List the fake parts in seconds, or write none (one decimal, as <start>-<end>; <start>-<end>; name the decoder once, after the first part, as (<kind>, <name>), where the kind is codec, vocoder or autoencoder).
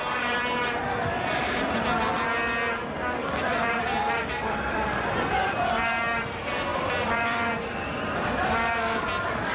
0.0-0.9 (vocoder, BigVGAN v2); 3.2-5.0; 6.7-7.5